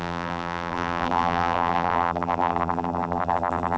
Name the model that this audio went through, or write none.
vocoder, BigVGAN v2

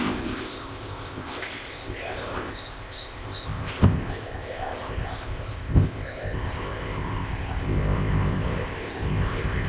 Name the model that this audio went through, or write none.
codec, ZipCodec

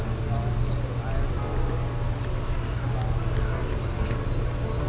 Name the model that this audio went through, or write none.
none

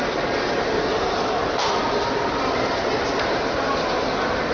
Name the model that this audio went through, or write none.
none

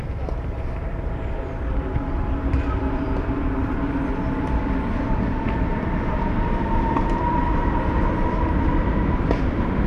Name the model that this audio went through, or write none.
vocoder, BigVGAN v2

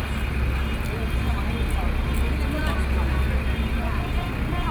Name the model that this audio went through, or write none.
none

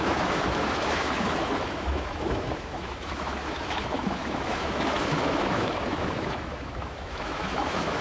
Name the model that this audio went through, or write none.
autoencoder, DAC-VAE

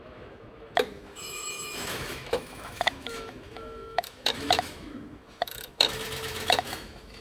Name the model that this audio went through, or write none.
autoencoder, DAC-VAE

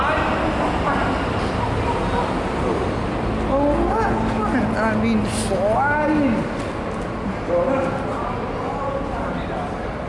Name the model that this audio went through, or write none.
none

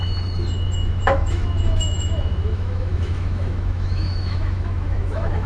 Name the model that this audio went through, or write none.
autoencoder, DAC-VAE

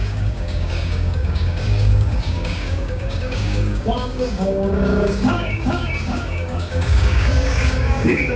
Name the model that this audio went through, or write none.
codec, DAC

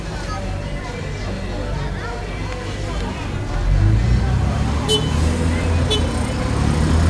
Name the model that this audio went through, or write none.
none